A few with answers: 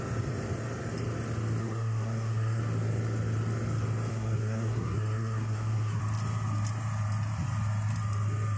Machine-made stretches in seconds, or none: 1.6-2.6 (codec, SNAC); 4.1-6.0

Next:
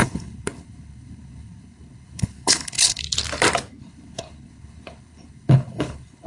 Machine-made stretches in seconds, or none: 0.0-3.0 (codec, HILCodec); 3.8-6.3

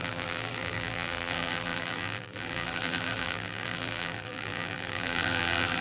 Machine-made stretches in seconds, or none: 0.0-5.8 (vocoder, BigVGAN v2)

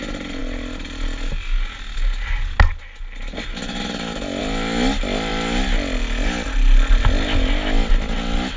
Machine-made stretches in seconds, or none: none

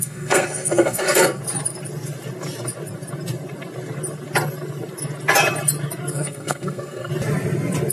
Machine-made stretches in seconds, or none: 0.0-1.4 (codec, SNAC); 6.1-7.1

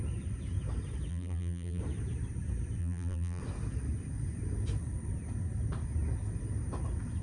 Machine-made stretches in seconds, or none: 1.1-1.8 (vocoder, BigVGAN v2); 2.8-3.4

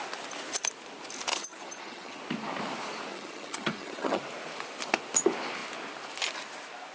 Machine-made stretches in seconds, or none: 1.3-2.2 (vocoder, HiFi-GAN); 3.1-4.2

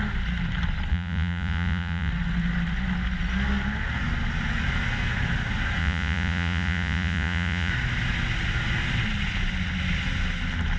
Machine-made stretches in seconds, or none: 0.9-2.1 (vocoder, Vocos); 5.8-7.7